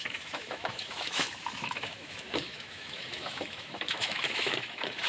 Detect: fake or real fake